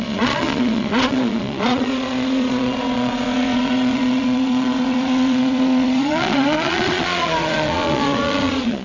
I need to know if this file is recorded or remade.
remade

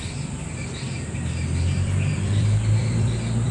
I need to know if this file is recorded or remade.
remade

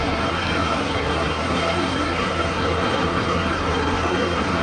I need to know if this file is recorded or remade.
remade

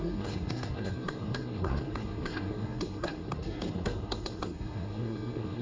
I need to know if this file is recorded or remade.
remade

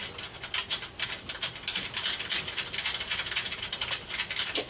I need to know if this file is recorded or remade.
recorded